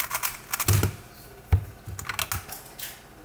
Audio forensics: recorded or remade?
recorded